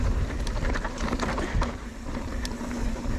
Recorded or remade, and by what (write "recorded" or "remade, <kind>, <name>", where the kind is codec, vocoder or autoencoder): remade, vocoder, BigVGAN v2